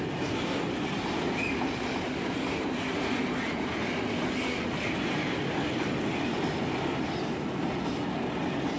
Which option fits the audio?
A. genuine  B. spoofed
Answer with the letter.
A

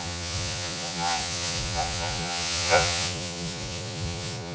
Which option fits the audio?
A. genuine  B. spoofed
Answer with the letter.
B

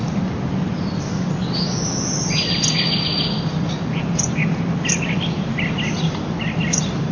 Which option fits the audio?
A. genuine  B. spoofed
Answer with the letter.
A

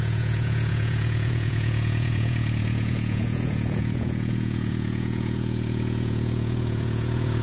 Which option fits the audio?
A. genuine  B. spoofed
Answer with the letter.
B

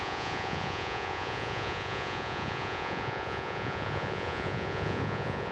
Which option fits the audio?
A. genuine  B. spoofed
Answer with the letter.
B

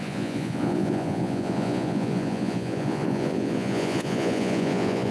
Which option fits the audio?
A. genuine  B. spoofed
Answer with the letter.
B